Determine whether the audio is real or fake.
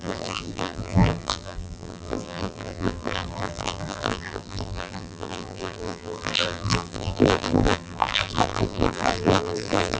fake